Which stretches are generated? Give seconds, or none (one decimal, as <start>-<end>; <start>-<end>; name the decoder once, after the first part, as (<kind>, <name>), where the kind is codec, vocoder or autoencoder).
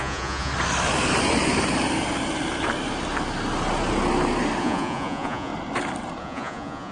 0.0-0.5 (vocoder, Vocos); 4.6-5.5; 6.2-6.9